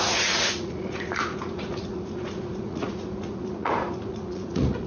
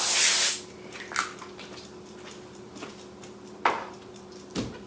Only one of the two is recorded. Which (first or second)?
second